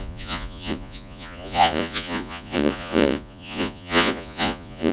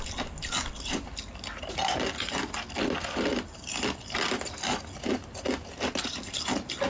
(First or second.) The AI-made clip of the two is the first